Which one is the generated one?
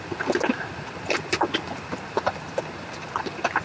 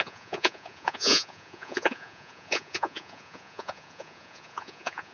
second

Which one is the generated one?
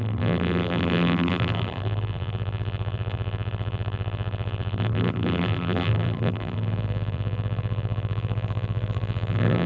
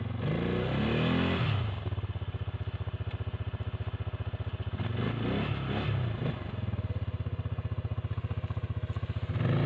first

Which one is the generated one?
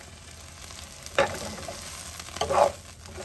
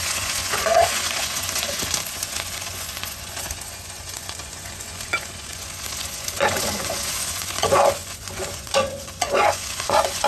second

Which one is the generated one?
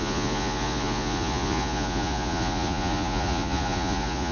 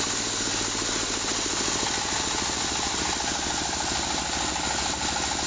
first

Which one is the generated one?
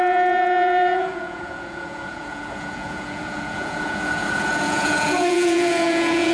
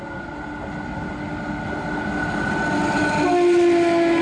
first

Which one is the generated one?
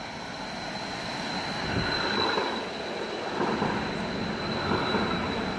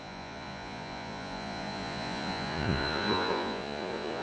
second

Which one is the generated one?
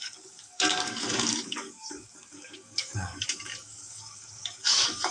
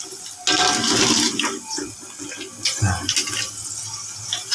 first